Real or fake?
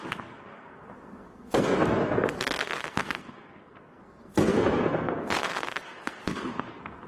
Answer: fake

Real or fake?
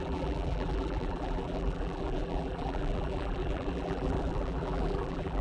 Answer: fake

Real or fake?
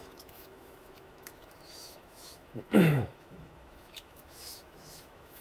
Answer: fake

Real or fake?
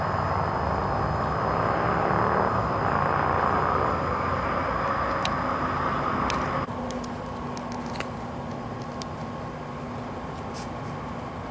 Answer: real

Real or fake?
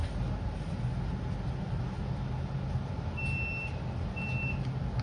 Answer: real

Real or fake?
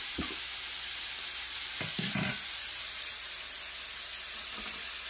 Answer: real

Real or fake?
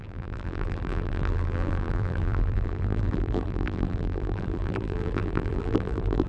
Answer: fake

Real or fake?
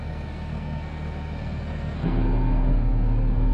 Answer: fake